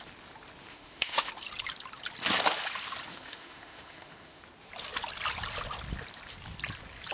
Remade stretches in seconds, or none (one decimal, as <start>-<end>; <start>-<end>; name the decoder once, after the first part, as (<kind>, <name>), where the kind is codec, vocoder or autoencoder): 0.7-1.3 (autoencoder, DAC-VAE); 3.1-4.4